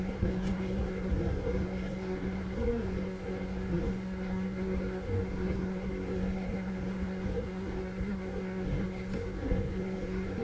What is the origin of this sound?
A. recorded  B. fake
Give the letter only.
B